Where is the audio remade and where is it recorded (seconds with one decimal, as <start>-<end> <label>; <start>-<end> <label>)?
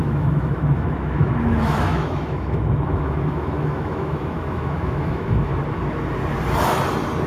0.0-5.5 remade; 5.5-7.3 recorded